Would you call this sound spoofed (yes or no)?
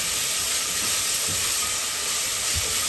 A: no